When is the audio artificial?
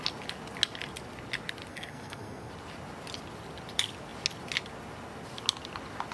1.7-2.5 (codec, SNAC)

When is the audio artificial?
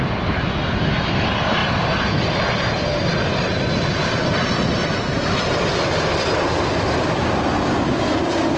1.6-2.3 (vocoder, BigVGAN v2); 3.3-8.2